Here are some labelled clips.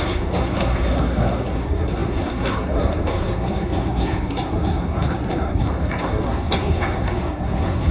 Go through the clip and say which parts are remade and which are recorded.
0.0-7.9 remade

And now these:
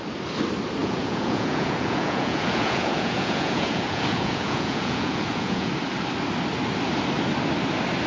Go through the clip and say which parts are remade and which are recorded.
0.0-0.8 recorded; 0.8-5.7 remade; 5.7-8.1 recorded

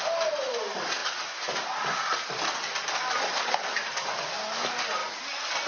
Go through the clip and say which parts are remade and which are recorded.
0.0-1.0 recorded; 1.0-2.8 remade; 2.8-5.7 recorded

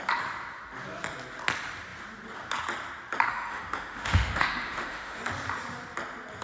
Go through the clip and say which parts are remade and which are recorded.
0.0-3.3 recorded; 3.3-5.2 remade; 5.2-6.4 recorded

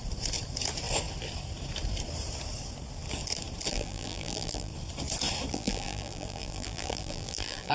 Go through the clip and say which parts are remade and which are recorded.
0.0-3.7 recorded; 3.7-4.7 remade; 4.7-5.5 recorded; 5.5-7.7 remade